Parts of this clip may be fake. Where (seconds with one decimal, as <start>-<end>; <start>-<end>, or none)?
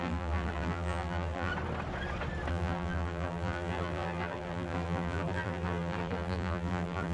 0.0-1.5; 2.5-7.1